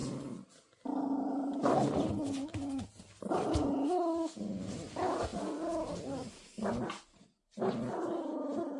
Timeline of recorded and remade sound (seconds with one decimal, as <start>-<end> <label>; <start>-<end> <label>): 0.0-8.8 recorded